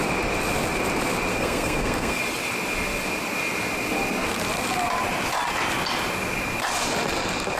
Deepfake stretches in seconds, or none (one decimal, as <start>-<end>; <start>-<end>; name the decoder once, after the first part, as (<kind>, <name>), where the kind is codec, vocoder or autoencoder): 1.3-2.2 (codec, SNAC)